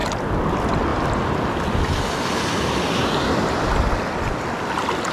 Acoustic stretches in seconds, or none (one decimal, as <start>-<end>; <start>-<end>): 0.0-5.1